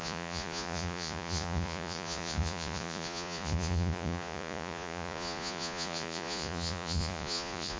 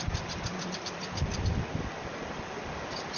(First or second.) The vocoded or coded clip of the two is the first